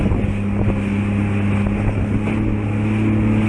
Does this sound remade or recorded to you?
recorded